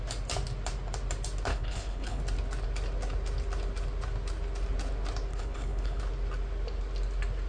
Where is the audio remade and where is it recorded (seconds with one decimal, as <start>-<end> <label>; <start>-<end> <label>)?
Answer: 0.0-1.5 recorded; 1.5-2.2 remade; 2.2-5.3 recorded; 5.3-6.0 remade; 6.0-7.5 recorded